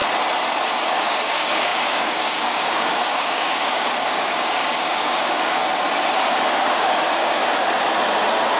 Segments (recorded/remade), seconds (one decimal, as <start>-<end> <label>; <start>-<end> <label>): 0.0-0.9 recorded; 0.9-5.6 remade; 5.6-6.6 recorded; 6.6-7.4 remade; 7.4-8.6 recorded